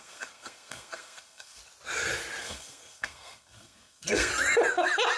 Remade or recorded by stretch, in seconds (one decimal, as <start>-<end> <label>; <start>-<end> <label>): 0.0-1.6 remade; 1.6-2.4 recorded; 2.4-4.3 remade; 4.3-5.2 recorded